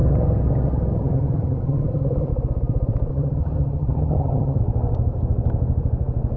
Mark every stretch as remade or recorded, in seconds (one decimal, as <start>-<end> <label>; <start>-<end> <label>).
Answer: 0.0-2.3 remade; 2.3-3.1 recorded; 3.1-4.6 remade; 4.6-6.4 recorded